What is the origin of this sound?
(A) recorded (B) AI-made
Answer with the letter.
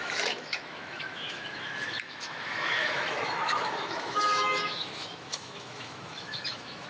B